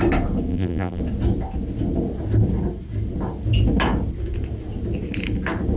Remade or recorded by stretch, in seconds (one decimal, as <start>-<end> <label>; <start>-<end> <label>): 0.0-0.5 recorded; 0.5-1.0 remade; 1.0-5.8 recorded